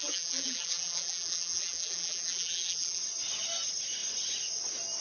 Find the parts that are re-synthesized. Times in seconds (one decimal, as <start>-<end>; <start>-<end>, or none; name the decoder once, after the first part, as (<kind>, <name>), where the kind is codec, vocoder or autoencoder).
0.0-3.0 (vocoder, BigVGAN v2)